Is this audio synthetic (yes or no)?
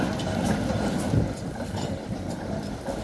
no